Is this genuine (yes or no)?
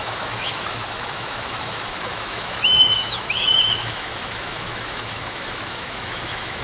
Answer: no